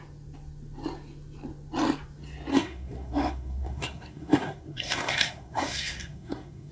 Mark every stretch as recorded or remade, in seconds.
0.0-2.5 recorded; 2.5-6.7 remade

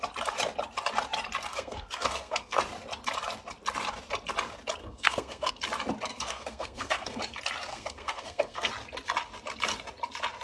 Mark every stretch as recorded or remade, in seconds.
0.0-1.5 recorded; 1.5-2.6 remade; 2.6-4.8 recorded; 4.8-5.5 remade; 5.5-6.1 recorded; 6.1-7.2 remade; 7.2-7.7 recorded; 7.7-8.7 remade; 8.7-10.4 recorded

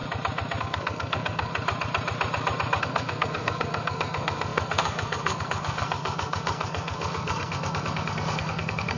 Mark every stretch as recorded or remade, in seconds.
0.0-0.6 recorded; 0.6-1.5 remade; 1.5-2.8 recorded; 2.8-9.0 remade

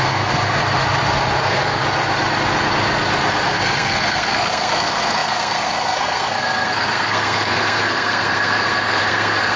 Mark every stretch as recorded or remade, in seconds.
0.0-0.6 remade; 0.6-1.4 recorded; 1.4-1.8 remade; 1.8-3.3 recorded; 3.3-9.6 remade

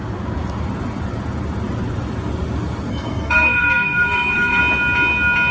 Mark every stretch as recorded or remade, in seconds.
0.0-2.9 recorded; 2.9-4.6 remade; 4.6-5.5 recorded

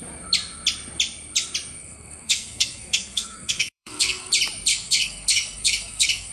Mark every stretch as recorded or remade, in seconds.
0.0-1.8 recorded; 1.8-4.3 remade; 4.3-4.7 recorded; 4.7-6.3 remade

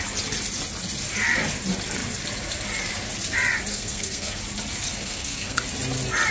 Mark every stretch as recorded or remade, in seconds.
0.0-3.7 recorded; 3.7-4.4 remade; 4.4-4.9 recorded; 4.9-5.6 remade; 5.6-6.3 recorded